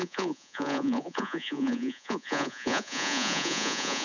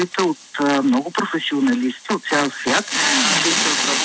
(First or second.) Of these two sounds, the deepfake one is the first